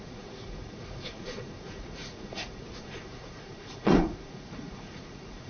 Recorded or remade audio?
remade